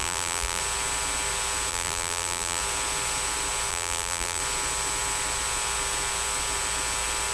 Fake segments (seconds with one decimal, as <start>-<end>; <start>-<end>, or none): 0.0-0.6; 1.7-2.6; 3.7-4.4